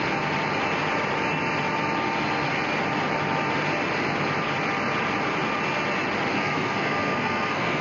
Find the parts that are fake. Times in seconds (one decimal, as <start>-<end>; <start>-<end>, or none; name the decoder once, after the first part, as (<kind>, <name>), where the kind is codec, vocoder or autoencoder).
6.3-7.8 (codec, SNAC)